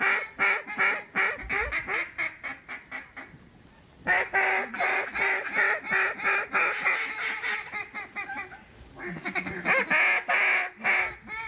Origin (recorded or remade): recorded